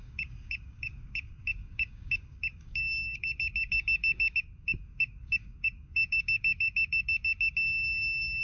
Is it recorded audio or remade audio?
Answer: remade